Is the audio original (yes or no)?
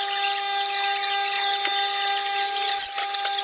yes